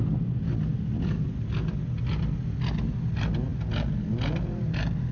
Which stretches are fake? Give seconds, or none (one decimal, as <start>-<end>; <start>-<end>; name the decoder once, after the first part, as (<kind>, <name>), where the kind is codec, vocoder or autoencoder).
none